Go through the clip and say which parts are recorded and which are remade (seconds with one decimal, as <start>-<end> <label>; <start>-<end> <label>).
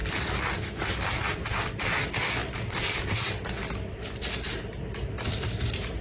0.0-6.0 recorded